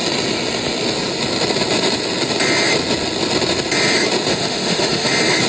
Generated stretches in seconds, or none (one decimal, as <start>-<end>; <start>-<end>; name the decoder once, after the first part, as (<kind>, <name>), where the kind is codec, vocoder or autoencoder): 4.3-5.1 (autoencoder, DAC-VAE)